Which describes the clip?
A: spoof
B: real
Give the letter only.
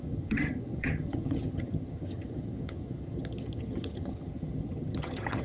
A